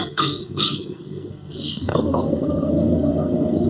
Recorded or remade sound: remade